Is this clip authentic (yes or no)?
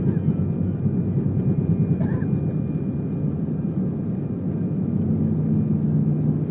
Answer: yes